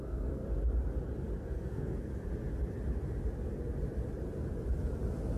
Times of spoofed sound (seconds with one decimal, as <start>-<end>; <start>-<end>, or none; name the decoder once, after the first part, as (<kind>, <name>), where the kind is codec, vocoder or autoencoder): 0.0-0.4 (codec, SNAC); 1.4-2.1